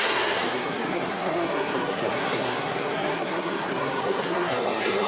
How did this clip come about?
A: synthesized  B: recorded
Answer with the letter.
A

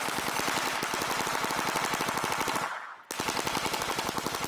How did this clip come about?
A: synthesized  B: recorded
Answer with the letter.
B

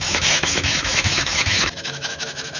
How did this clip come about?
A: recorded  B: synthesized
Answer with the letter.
B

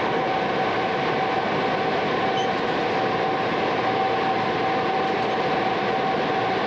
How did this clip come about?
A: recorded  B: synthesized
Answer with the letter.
A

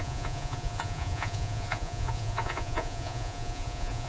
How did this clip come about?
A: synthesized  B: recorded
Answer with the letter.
A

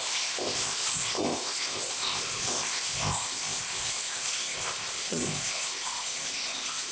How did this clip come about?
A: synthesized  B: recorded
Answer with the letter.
A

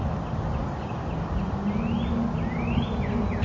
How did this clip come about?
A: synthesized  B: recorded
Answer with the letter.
B